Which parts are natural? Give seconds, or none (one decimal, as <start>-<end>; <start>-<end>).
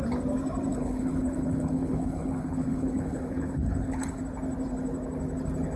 0.0-0.7; 4.2-5.8